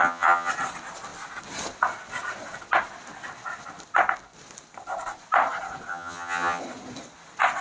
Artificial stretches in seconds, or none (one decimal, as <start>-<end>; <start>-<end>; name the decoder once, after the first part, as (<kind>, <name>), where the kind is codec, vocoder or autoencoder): 0.0-0.5 (vocoder, HiFi-GAN); 5.9-6.6